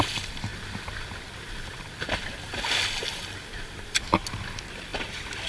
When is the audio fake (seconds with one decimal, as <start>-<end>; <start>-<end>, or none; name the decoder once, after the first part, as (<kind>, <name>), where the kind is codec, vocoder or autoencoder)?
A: none